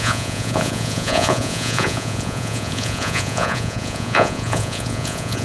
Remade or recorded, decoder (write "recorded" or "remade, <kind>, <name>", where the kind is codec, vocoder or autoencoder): remade, vocoder, Vocos